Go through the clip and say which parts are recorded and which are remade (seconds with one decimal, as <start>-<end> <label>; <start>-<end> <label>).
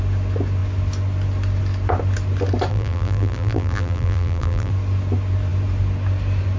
0.0-2.7 recorded; 2.7-4.7 remade; 4.7-6.6 recorded